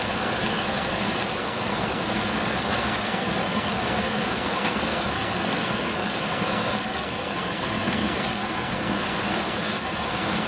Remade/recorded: remade